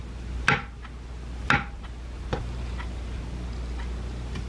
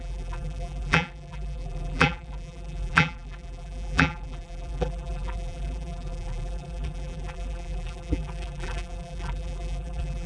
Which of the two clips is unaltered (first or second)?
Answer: first